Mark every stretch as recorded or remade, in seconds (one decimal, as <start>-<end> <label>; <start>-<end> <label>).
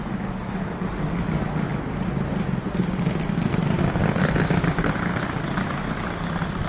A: 0.0-6.7 recorded